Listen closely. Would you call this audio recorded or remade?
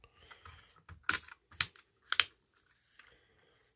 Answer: recorded